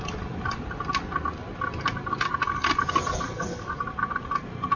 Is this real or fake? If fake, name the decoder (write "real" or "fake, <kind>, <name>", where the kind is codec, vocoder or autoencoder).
real